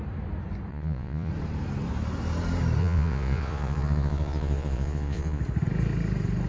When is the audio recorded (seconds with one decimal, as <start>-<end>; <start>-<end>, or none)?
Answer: 0.0-0.7; 1.3-2.8; 5.4-6.5